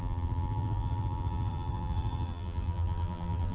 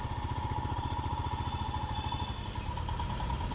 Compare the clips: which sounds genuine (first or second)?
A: second